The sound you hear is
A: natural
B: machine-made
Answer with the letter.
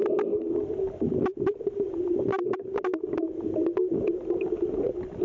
A